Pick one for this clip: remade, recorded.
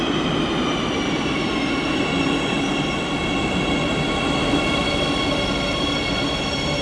recorded